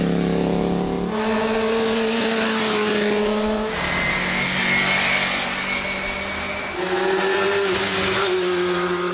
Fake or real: real